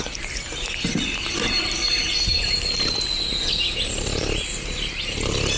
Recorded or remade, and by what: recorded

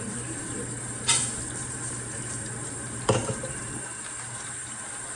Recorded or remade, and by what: remade, vocoder, BigVGAN v2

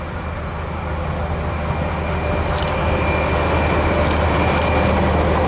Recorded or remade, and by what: recorded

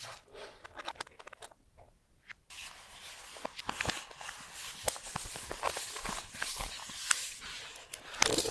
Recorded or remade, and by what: recorded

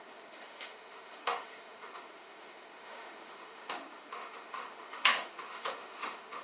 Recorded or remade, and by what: remade, autoencoder, DAC-VAE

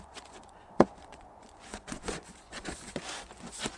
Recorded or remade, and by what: remade, vocoder, Vocos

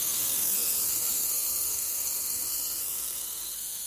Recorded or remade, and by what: remade, codec, SNAC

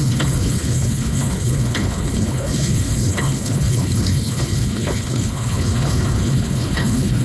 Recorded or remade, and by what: remade, codec, HILCodec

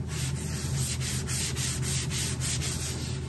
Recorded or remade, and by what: recorded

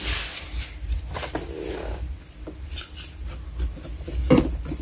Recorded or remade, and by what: recorded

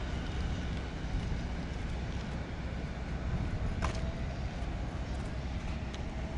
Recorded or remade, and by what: recorded